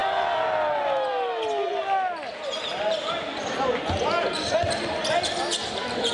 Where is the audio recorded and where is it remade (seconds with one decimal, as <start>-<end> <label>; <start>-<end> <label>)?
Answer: 0.0-6.1 recorded